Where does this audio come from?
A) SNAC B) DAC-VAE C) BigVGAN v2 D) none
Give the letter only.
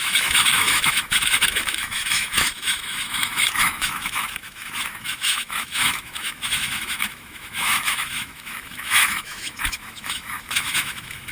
B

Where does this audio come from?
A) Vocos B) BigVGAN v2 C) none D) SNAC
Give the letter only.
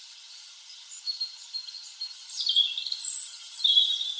C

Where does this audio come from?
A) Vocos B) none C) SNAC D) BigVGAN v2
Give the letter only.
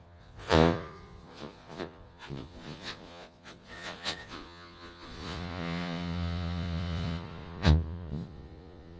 A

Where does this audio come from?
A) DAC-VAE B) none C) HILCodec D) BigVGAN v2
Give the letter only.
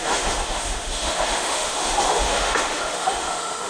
A